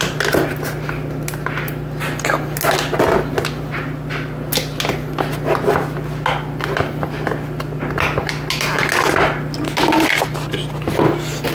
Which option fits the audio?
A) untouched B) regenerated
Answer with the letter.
A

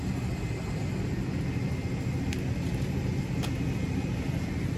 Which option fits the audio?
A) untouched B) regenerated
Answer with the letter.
A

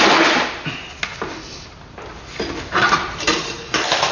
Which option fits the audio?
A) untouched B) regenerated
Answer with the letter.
A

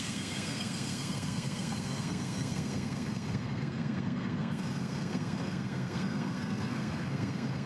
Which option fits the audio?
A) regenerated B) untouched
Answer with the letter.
A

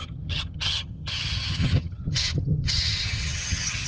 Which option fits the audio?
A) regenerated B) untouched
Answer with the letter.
A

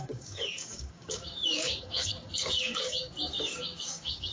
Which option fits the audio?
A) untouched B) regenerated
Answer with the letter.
B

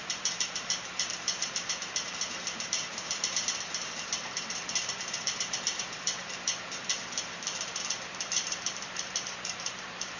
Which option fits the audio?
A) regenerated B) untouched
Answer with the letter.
A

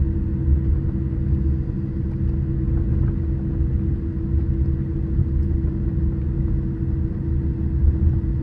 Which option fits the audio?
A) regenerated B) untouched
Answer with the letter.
B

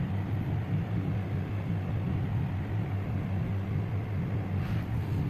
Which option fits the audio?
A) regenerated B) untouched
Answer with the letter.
B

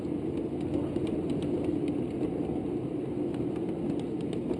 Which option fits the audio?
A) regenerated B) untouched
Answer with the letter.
B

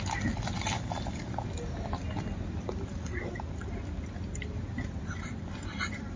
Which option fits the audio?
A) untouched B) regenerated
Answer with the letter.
A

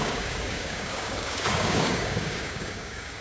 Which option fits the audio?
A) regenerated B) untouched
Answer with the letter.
A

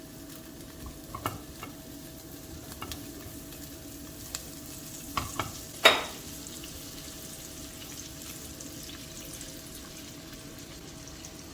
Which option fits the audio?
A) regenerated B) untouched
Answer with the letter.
B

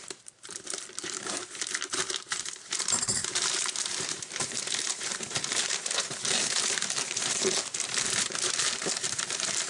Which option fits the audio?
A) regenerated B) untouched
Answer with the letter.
A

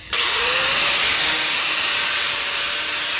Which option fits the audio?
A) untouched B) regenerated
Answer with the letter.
B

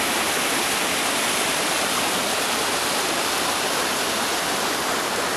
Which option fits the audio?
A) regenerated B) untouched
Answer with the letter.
A